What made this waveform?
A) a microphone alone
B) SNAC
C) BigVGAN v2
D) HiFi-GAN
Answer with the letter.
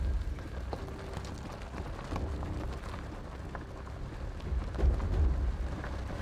A